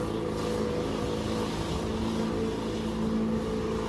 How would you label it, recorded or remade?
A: recorded